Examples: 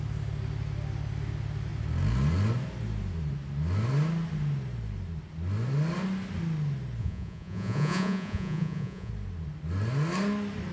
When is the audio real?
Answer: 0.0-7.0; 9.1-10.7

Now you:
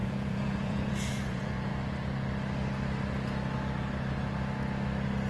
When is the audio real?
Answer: 1.7-5.3